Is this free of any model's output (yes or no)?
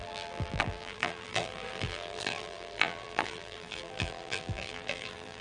no